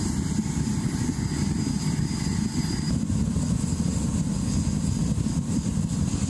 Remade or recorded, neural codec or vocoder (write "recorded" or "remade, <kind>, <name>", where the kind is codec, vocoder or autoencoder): remade, vocoder, BigVGAN v2